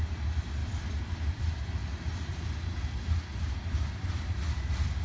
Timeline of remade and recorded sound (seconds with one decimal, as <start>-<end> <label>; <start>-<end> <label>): 0.0-5.0 recorded